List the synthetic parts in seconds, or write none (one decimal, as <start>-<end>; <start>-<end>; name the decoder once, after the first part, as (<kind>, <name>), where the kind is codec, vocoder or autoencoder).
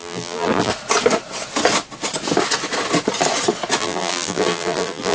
0.0-0.7 (vocoder, BigVGAN v2); 3.8-5.1